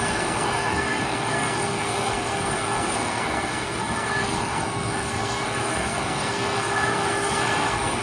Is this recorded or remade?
remade